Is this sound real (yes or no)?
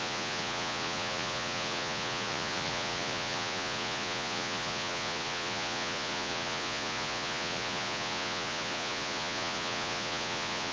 no